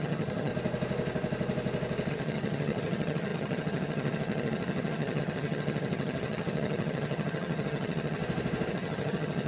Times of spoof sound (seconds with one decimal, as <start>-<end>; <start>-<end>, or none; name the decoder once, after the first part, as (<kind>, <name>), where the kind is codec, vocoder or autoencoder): 0.0-0.5 (vocoder, HiFi-GAN); 2.1-8.2; 8.7-9.5